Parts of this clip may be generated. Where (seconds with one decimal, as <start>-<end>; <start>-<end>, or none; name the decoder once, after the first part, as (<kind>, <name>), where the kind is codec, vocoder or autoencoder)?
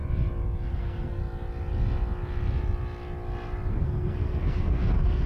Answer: 0.7-1.2 (codec, SNAC); 3.7-5.3